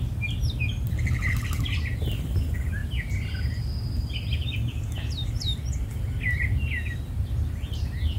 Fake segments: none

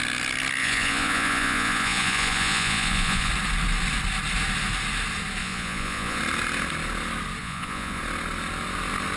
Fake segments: 0.6-3.3 (vocoder, Vocos); 5.4-6.2; 7.4-8.0

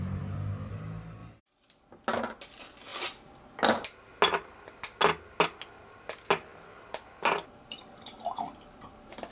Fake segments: none

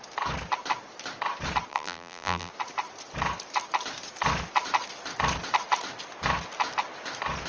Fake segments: 1.7-2.5 (vocoder, BigVGAN v2)